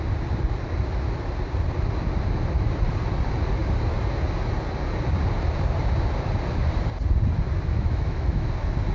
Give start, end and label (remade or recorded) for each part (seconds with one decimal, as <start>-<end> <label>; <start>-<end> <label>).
0.0-7.7 recorded; 7.7-8.5 remade; 8.5-8.9 recorded